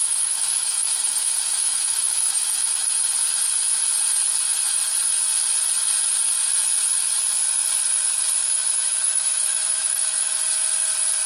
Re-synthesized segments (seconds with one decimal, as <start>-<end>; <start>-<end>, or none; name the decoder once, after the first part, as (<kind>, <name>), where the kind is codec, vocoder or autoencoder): 0.0-2.9 (autoencoder, DAC-VAE); 8.4-10.4